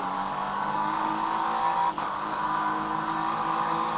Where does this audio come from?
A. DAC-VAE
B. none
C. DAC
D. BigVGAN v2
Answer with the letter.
C